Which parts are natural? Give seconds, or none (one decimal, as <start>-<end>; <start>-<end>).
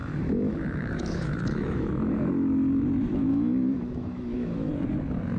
1.9-3.3; 4.7-5.4